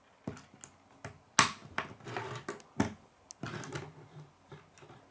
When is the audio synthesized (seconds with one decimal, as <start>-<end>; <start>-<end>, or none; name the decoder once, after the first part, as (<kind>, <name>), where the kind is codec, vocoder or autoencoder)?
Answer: none